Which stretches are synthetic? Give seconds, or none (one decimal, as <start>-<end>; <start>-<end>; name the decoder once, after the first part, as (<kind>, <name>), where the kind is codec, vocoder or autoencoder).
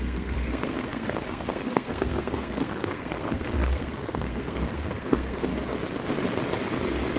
0.0-5.5 (codec, SNAC)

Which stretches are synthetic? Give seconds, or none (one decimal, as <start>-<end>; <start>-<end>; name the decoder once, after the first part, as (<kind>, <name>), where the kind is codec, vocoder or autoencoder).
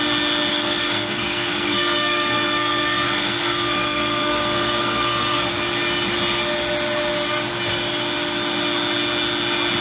0.5-5.5 (codec, SNAC)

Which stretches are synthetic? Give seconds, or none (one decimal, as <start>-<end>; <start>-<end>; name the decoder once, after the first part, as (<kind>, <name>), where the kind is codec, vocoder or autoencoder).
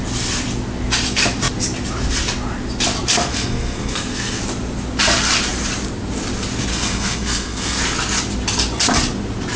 3.3-4.4 (codec, SNAC); 6.7-7.8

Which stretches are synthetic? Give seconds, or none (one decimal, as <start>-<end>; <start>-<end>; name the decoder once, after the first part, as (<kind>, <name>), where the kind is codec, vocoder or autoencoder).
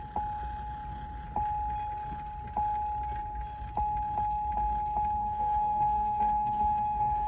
5.2-7.3 (codec, SNAC)